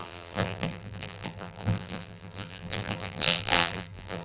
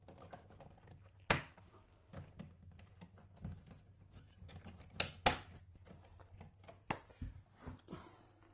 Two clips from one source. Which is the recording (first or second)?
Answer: second